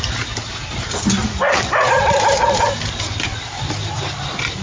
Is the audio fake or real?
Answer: real